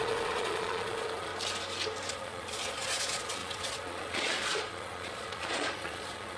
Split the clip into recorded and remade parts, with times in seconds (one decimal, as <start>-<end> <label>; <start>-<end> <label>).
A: 0.0-1.3 remade; 1.3-2.1 recorded; 2.1-6.4 remade